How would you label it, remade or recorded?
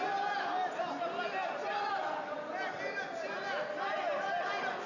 recorded